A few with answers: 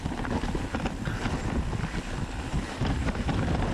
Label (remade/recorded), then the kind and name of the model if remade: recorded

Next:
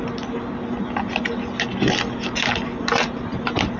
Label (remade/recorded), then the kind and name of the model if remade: recorded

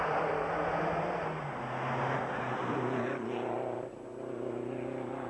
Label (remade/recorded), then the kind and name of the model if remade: recorded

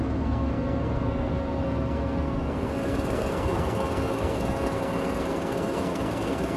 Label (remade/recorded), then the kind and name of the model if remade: remade, codec, SNAC